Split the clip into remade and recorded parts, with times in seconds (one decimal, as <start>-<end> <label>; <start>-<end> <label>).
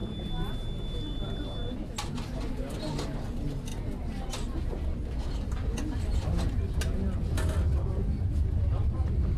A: 0.0-5.2 recorded; 5.2-7.3 remade; 7.3-9.4 recorded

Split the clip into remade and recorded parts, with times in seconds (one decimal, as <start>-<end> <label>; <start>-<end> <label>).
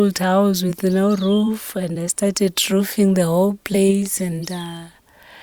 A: 0.0-0.7 recorded; 0.7-3.9 remade; 3.9-5.4 recorded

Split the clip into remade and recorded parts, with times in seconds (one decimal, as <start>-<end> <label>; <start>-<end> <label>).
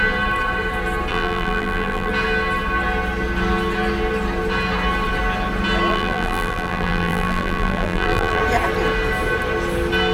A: 0.0-1.1 recorded; 1.1-2.1 remade; 2.1-5.9 recorded; 5.9-8.4 remade; 8.4-10.1 recorded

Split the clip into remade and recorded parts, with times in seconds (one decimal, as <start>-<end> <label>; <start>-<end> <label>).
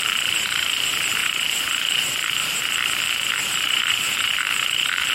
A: 0.0-5.1 remade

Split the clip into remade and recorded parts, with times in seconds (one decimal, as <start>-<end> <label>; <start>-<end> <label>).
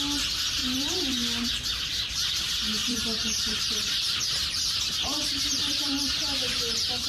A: 0.0-0.6 recorded; 0.6-2.4 remade; 2.4-2.8 recorded; 2.8-6.6 remade; 6.6-7.1 recorded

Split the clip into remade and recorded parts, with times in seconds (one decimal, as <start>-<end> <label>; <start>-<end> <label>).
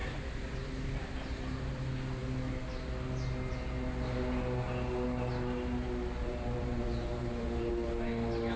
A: 0.0-1.8 remade; 1.8-6.2 recorded; 6.2-7.7 remade; 7.7-8.6 recorded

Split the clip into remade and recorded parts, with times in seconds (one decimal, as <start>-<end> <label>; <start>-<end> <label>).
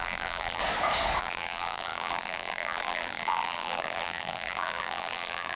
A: 0.0-0.6 remade; 0.6-1.2 recorded; 1.2-5.5 remade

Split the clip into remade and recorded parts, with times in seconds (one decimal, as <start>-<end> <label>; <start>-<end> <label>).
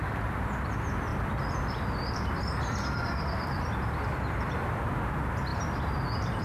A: 0.0-1.1 recorded; 1.1-4.9 remade; 4.9-6.4 recorded